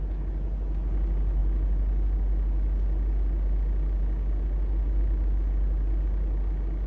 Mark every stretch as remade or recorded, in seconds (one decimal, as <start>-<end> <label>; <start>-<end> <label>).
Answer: 0.0-6.9 recorded